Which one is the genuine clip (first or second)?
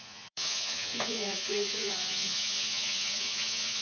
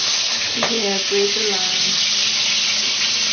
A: second